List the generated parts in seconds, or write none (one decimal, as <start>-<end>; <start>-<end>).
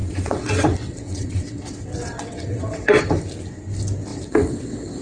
0.0-3.0; 4.1-5.0